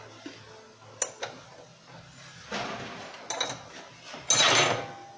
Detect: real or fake real